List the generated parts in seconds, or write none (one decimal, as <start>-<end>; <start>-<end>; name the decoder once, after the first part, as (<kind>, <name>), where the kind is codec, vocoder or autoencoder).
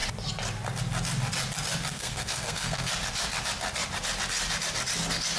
1.9-2.9 (codec, SNAC)